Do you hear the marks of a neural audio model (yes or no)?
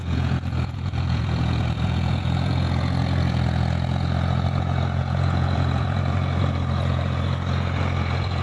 yes